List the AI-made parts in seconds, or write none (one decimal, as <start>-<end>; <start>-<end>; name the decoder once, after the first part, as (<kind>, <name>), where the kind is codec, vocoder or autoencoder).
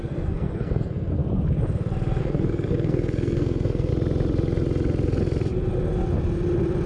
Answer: 0.0-1.2 (codec, SNAC); 2.2-3.9